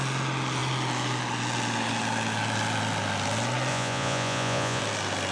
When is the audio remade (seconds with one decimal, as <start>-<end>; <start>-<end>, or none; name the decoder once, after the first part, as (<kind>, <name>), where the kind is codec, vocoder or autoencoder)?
3.7-4.8 (vocoder, Vocos)

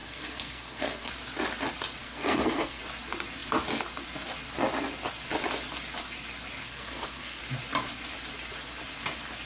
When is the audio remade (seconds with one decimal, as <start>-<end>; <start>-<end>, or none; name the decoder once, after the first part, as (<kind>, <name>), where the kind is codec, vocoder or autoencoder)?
0.0-1.1 (codec, SNAC); 2.0-2.8; 6.6-7.4

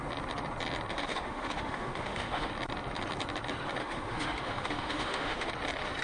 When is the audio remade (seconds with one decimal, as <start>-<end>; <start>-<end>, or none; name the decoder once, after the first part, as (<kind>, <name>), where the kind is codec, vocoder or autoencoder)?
0.9-2.5 (autoencoder, DAC-VAE); 3.8-5.5